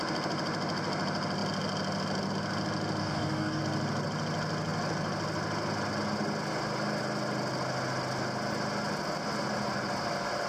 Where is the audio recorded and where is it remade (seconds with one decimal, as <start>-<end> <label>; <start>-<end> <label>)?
0.0-3.0 recorded; 3.0-3.6 remade; 3.6-10.5 recorded